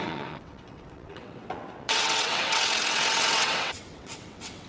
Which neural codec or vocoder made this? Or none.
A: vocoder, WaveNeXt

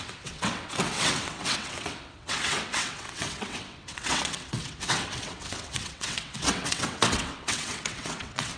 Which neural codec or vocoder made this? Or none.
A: vocoder, WaveNeXt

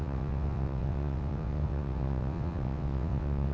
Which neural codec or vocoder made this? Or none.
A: vocoder, WaveNeXt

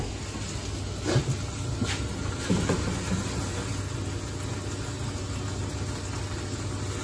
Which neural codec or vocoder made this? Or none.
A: none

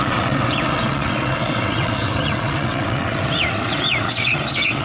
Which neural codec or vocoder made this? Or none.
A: vocoder, WaveNeXt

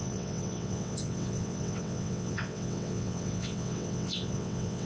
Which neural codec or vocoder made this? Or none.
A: vocoder, WaveNeXt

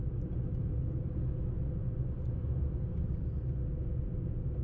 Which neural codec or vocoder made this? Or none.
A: none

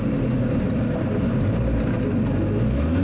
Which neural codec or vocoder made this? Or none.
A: none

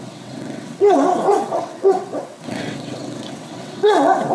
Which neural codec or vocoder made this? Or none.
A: vocoder, WaveNeXt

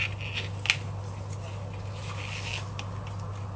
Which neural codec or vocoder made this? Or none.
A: none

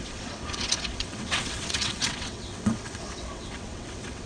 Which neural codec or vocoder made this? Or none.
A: vocoder, WaveNeXt